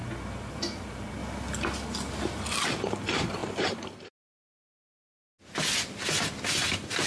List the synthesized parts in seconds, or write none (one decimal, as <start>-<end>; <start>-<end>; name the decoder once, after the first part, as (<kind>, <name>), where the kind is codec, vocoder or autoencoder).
0.5-1.2 (vocoder, BigVGAN v2); 2.6-5.1